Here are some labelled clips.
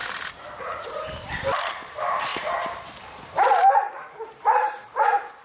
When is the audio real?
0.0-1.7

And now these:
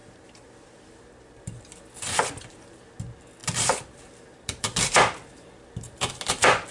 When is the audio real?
3.0-3.4; 6.1-6.7